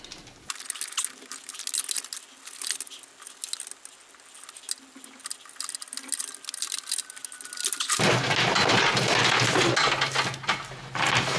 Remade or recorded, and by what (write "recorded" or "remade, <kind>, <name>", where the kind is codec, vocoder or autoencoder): recorded